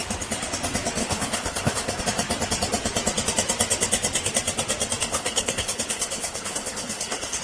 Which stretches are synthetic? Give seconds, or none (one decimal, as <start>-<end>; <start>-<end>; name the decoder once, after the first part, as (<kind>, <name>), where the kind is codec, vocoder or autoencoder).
1.0-2.0 (codec, HILCodec); 5.1-7.4